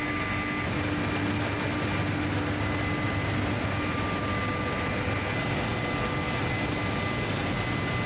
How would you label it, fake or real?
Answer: real